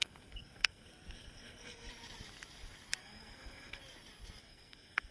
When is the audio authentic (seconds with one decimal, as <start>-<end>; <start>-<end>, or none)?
1.9-3.0; 3.8-4.4